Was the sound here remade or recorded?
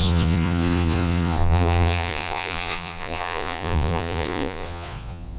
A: remade